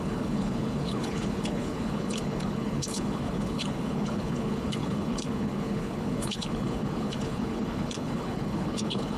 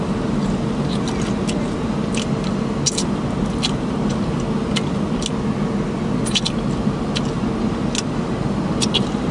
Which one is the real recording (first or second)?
second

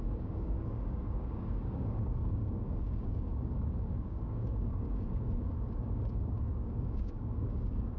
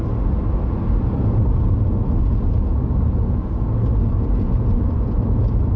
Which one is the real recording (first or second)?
second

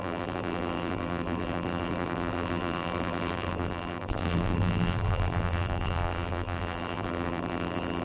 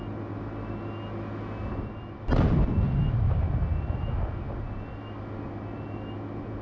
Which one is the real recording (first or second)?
second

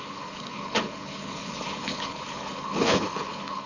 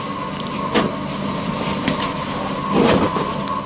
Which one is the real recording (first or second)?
second